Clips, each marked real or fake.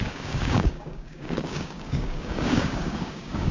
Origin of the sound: fake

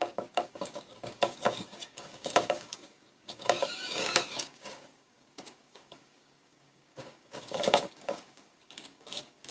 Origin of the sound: fake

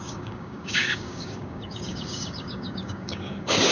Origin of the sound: fake